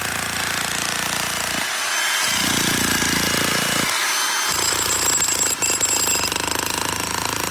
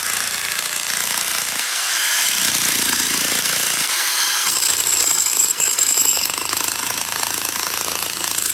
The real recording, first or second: first